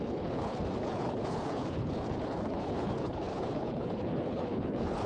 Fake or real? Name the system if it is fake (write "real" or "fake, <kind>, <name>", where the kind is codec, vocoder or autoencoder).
fake, codec, HILCodec